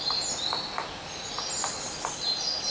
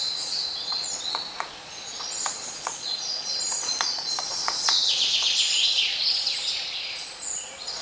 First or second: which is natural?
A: first